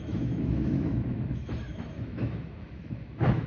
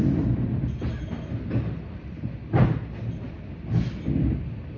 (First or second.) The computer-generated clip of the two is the first